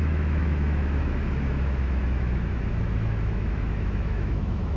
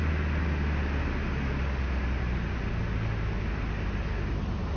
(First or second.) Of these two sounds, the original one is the second